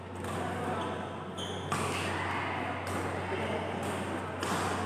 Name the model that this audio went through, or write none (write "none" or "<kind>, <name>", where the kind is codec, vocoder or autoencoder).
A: none